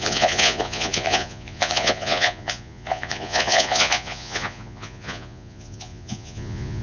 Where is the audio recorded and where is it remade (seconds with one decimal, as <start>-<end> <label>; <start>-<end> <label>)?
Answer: 0.0-6.8 remade